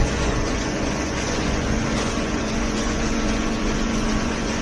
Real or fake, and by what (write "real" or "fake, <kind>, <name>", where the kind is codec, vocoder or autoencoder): fake, vocoder, Vocos